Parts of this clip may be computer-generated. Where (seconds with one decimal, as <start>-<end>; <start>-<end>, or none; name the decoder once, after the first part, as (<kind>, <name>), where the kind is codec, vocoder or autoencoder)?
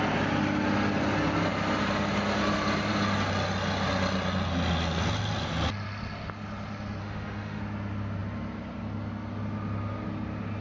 7.0-7.6 (autoencoder, DAC-VAE)